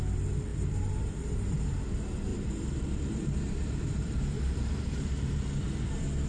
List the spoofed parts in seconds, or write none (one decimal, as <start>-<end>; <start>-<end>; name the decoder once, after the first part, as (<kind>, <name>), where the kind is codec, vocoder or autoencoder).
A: 0.5-1.7 (vocoder, BigVGAN v2); 2.3-5.4